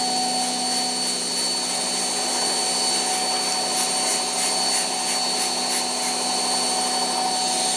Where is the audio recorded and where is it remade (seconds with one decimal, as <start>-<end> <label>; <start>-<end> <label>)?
0.0-7.8 recorded